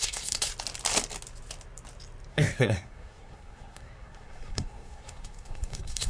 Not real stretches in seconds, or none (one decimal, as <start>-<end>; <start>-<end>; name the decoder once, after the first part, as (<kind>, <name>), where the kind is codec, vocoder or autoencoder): 0.0-0.5 (codec, SNAC); 2.3-6.1